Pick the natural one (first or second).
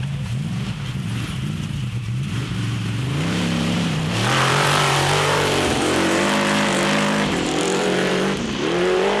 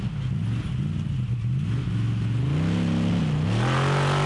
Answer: second